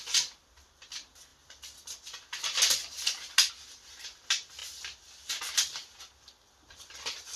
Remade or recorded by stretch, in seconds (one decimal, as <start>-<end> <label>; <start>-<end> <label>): 0.0-7.4 recorded